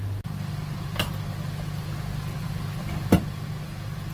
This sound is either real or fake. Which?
real